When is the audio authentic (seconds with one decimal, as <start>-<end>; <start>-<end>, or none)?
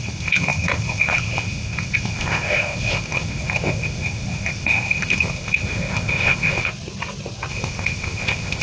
6.7-7.5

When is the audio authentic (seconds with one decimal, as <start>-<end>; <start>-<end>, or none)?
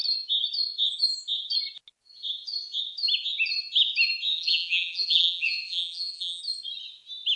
0.0-4.3; 6.4-7.4